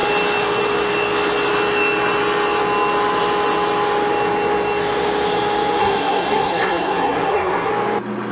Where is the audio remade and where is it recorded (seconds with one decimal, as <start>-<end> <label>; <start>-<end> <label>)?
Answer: 0.0-5.8 recorded; 5.8-7.7 remade; 7.7-8.3 recorded

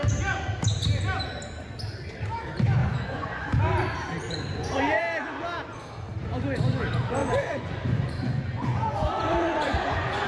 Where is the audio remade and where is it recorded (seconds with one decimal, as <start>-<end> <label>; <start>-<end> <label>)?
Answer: 0.0-2.8 recorded; 2.8-3.6 remade; 3.6-4.5 recorded; 4.5-5.0 remade; 5.0-7.2 recorded; 7.2-10.3 remade

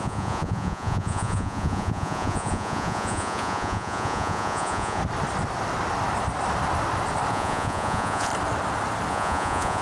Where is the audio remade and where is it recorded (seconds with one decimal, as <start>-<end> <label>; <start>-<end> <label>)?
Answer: 0.0-5.0 remade; 5.0-7.3 recorded; 7.3-8.3 remade; 8.3-9.1 recorded; 9.1-9.8 remade

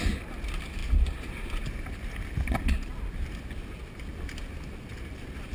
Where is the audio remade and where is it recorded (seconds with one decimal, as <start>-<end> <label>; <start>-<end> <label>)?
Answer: 0.0-5.5 recorded

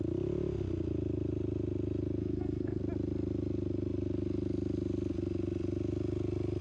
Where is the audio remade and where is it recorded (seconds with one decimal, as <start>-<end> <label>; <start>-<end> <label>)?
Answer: 0.0-2.2 recorded; 2.2-2.8 remade; 2.8-6.6 recorded